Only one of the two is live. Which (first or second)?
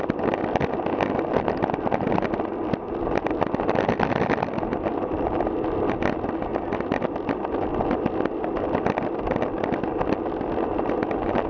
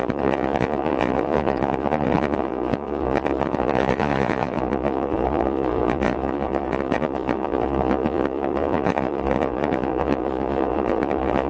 first